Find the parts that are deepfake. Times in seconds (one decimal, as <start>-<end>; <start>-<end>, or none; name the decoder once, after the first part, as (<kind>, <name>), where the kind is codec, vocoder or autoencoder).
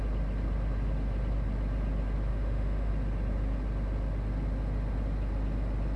2.3-2.9 (autoencoder, DAC-VAE)